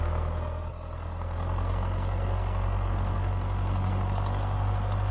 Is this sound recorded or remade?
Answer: remade